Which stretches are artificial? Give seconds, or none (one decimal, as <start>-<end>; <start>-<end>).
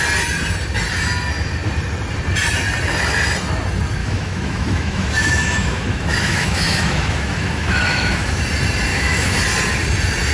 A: 4.0-8.4; 8.9-9.4